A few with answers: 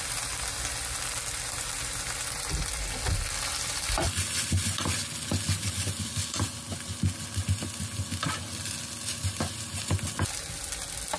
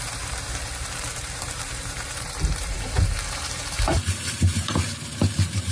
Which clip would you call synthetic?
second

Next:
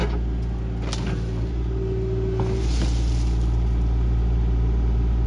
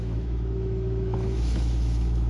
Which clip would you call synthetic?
second